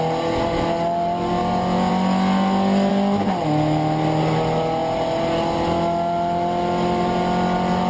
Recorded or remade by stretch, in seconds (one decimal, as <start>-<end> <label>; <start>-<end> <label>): 0.0-7.9 recorded